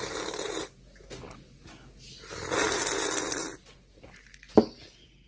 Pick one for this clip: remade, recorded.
recorded